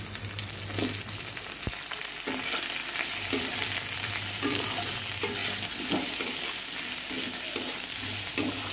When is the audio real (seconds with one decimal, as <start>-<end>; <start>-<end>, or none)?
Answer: 0.0-2.8; 4.9-8.7